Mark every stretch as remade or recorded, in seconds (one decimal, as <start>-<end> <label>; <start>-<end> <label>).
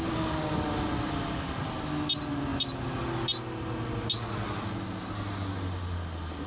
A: 0.0-6.5 recorded